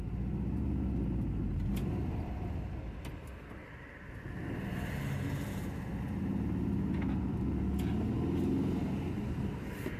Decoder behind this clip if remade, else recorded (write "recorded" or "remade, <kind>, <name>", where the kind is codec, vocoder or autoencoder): recorded